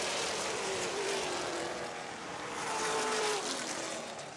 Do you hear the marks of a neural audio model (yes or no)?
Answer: yes